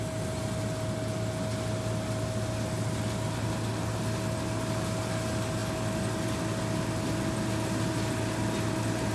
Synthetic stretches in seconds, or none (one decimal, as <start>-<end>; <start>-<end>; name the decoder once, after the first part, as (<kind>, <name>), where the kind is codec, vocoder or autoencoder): none